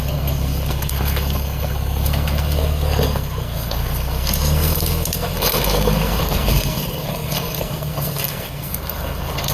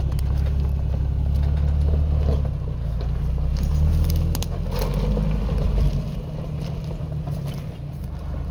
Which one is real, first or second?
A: second